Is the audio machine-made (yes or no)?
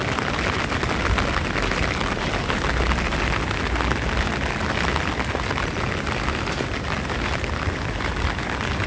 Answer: no